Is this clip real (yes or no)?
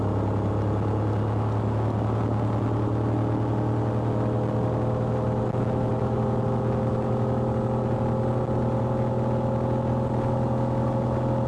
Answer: yes